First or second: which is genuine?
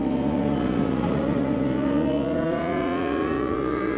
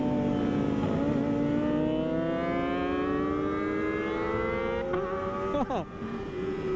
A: second